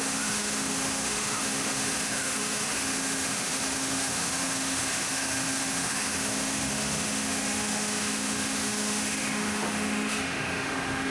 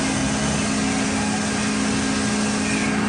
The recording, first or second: second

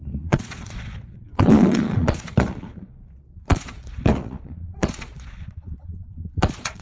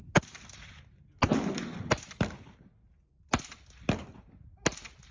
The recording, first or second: second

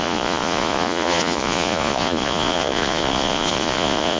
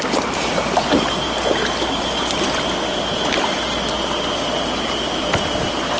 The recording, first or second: second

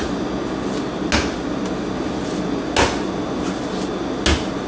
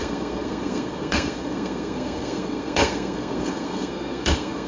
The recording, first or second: first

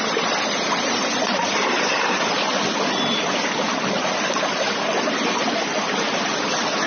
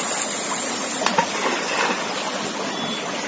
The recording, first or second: second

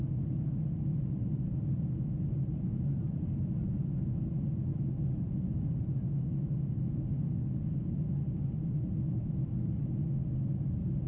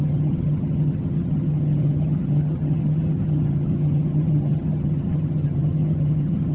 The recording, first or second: first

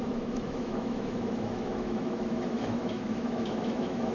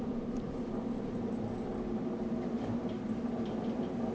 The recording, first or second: second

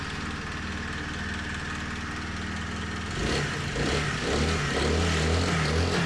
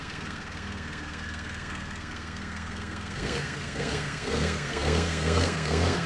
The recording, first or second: first